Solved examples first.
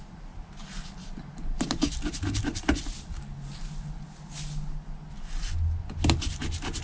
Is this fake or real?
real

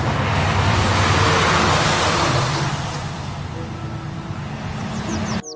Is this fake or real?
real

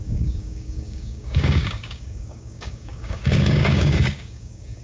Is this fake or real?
fake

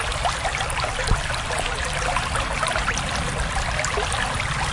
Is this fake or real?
real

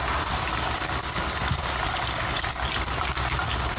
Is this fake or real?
real